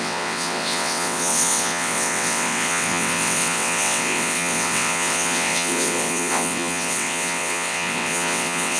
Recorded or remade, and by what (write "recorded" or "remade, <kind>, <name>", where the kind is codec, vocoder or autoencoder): remade, vocoder, WaveNeXt